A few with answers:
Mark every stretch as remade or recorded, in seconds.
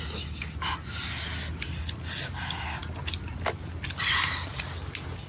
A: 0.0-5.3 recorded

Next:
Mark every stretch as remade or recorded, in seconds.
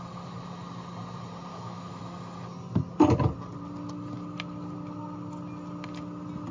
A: 0.0-1.5 recorded; 1.5-2.0 remade; 2.0-6.5 recorded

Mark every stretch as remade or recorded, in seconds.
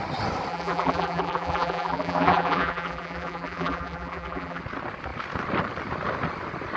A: 0.0-0.5 recorded; 0.5-4.6 remade; 4.6-6.8 recorded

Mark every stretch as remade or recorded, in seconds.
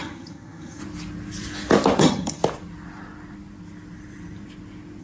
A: 0.0-0.8 remade; 0.8-2.0 recorded; 2.0-2.4 remade; 2.4-5.0 recorded